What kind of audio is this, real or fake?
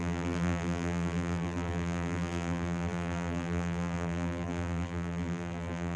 fake